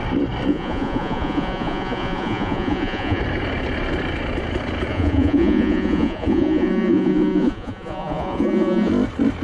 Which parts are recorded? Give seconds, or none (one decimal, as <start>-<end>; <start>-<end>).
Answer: 0.0-0.5; 3.2-4.9; 8.9-9.4